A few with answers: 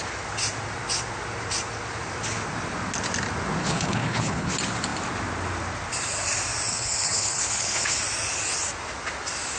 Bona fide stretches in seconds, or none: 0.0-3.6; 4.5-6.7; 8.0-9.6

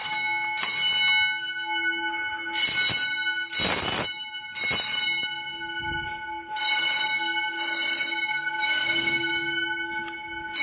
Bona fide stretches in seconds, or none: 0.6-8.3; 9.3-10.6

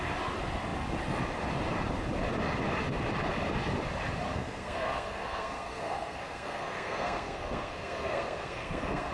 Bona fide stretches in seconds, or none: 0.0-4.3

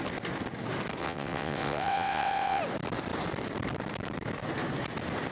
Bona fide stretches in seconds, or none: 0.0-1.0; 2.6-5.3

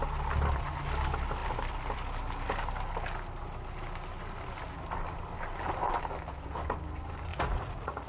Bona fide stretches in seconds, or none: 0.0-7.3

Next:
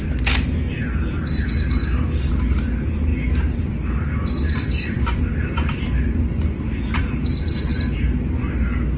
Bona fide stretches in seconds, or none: 0.0-1.8; 2.3-4.2; 7.0-7.7; 8.5-9.0